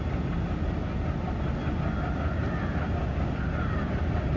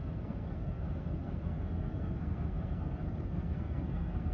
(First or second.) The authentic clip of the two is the first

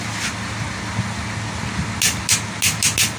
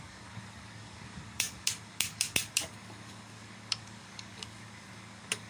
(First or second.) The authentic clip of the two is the first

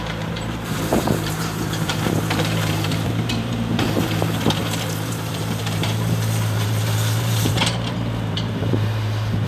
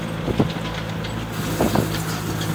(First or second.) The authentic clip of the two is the second